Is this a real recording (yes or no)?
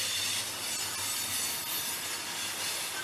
yes